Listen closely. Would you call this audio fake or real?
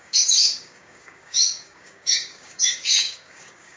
fake